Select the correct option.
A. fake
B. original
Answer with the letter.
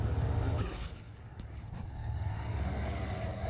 A